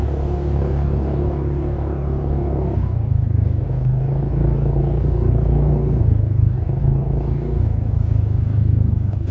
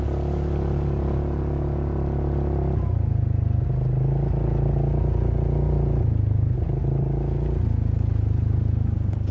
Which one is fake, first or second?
first